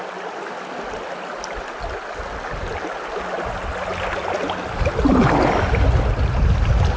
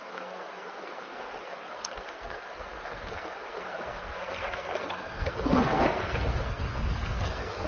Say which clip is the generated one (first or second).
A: second